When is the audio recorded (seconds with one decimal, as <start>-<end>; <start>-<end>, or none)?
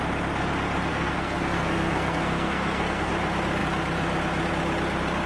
0.0-0.9; 3.1-5.3